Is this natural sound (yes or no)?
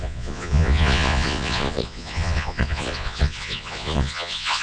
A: no